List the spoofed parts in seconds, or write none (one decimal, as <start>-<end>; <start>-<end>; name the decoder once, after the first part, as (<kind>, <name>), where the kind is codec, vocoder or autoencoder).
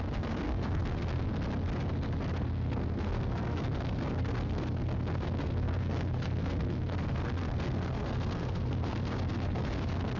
0.0-1.3 (codec, SNAC); 2.4-10.2